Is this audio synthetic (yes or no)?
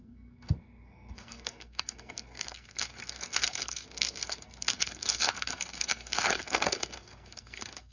yes